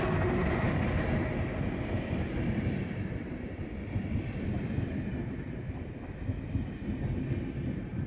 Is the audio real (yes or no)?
yes